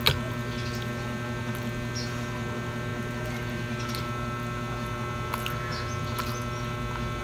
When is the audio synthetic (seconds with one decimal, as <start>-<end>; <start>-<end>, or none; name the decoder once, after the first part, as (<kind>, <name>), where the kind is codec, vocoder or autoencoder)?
none